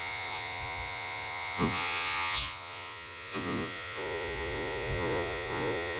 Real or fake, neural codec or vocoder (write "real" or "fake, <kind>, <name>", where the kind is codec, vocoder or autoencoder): fake, vocoder, Vocos